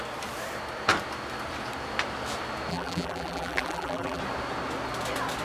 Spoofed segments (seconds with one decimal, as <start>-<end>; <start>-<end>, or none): 2.7-4.2